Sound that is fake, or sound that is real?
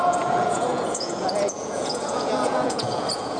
fake